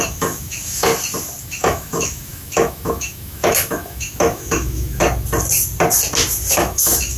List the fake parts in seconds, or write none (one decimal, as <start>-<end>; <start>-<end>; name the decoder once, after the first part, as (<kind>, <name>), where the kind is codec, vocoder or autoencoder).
0.0-0.9 (autoencoder, DAC-VAE); 1.4-5.0; 6.5-7.2